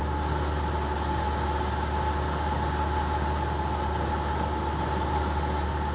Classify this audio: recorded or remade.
recorded